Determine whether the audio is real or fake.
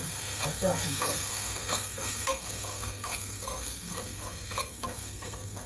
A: fake